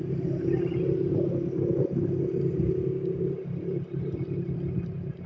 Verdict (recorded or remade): recorded